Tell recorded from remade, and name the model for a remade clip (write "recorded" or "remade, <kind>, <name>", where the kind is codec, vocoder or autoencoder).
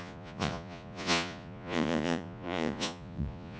remade, vocoder, Vocos